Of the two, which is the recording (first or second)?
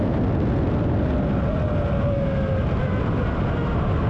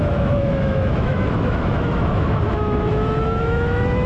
first